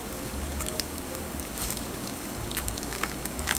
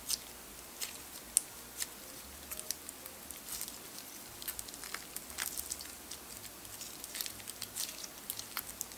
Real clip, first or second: second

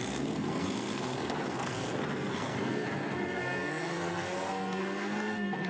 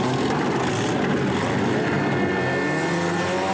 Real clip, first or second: second